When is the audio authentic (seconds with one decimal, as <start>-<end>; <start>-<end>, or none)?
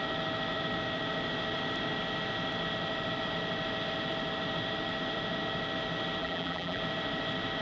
0.0-6.2; 6.8-7.6